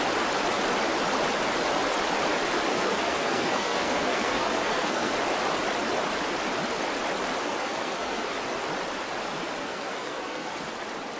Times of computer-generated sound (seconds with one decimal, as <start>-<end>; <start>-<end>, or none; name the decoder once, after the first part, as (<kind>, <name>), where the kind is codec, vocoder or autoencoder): 2.7-5.1 (codec, SNAC); 7.4-8.3; 9.6-10.7